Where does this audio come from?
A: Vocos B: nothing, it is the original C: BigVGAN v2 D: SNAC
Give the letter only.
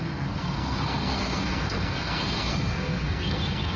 D